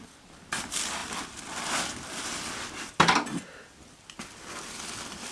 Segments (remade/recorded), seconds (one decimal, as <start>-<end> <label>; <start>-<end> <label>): 0.0-5.3 recorded